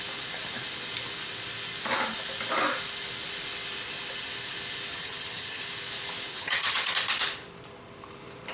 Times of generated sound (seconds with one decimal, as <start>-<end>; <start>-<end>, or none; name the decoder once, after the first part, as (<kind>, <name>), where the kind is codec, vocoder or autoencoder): 4.9-5.6 (vocoder, HiFi-GAN); 6.3-6.9